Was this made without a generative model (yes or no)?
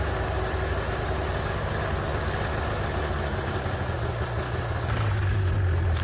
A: yes